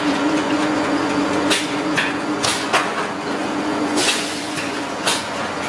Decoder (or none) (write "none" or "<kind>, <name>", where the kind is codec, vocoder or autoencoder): vocoder, Vocos